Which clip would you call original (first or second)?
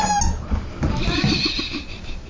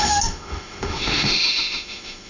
first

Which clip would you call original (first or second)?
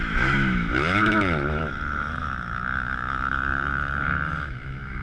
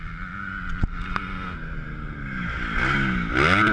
second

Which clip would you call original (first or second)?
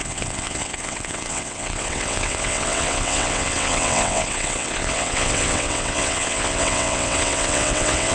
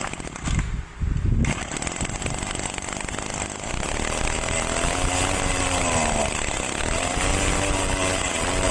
second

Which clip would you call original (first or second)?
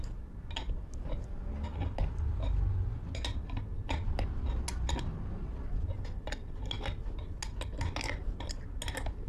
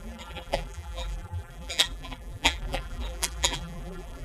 first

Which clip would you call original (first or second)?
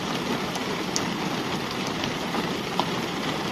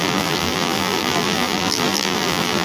first